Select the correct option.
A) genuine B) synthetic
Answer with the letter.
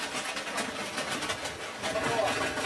A